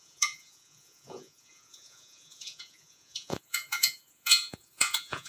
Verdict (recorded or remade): remade